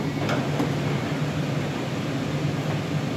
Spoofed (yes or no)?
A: no